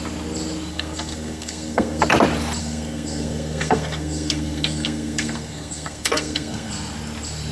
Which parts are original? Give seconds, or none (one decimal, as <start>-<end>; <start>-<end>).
0.0-0.7; 2.0-2.6; 6.7-7.5